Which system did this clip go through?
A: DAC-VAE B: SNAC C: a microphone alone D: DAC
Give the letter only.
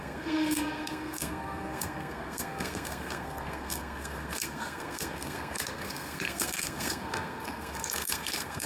B